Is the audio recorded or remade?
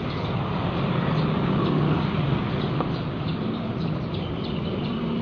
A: recorded